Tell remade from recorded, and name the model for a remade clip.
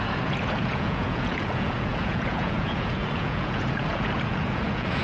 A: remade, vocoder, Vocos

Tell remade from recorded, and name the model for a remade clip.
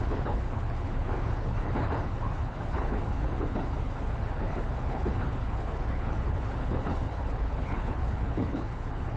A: remade, codec, HILCodec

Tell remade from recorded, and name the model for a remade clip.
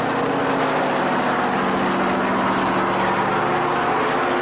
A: recorded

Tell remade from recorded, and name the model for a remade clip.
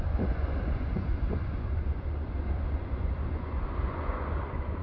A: remade, vocoder, Vocos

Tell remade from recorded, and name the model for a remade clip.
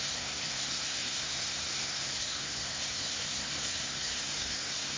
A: remade, codec, SNAC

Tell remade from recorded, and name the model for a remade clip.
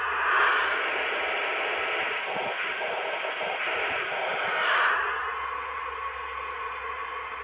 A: recorded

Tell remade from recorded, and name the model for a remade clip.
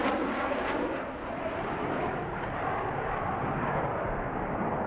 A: recorded